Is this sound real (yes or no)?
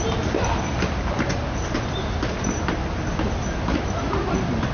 yes